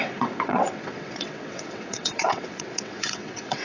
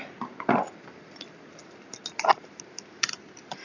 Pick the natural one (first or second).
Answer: second